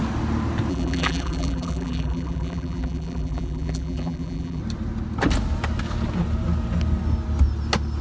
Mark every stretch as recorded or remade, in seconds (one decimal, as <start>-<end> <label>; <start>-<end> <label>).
0.0-0.7 recorded; 0.7-4.6 remade; 4.6-8.0 recorded